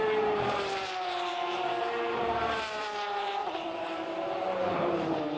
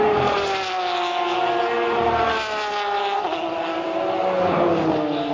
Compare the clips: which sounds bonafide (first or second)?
second